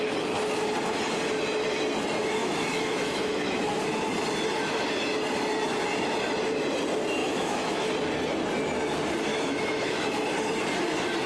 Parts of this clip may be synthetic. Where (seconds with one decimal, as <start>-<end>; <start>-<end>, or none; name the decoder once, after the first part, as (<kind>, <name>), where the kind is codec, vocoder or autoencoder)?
2.4-3.8 (autoencoder, DAC-VAE); 7.2-7.9; 9.3-10.1